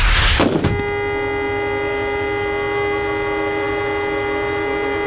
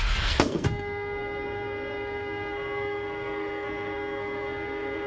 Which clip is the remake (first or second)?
second